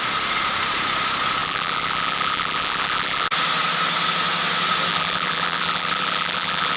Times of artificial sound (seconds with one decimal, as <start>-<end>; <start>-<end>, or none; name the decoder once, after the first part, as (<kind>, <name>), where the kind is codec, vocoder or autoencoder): 1.4-3.3 (vocoder, BigVGAN v2); 4.9-6.8